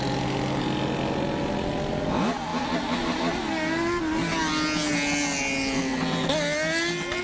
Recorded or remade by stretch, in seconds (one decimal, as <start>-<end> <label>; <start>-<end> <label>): 0.0-7.2 recorded